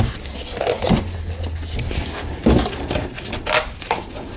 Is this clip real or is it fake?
real